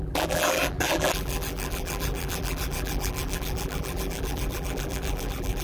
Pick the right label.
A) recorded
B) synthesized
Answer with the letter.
B